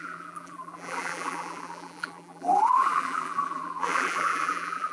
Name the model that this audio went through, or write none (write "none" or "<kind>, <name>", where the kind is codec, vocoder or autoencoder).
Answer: vocoder, BigVGAN v2